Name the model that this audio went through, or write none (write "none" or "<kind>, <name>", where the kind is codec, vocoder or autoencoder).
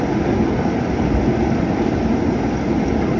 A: none